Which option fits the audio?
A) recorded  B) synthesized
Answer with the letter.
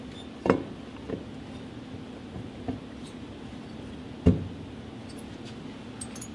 A